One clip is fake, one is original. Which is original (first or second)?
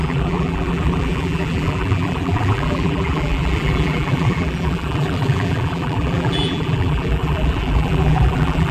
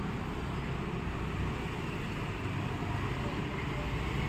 second